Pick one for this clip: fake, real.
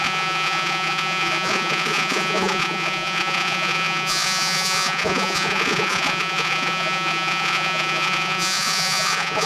fake